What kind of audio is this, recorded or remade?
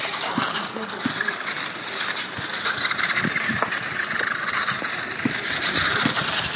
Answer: remade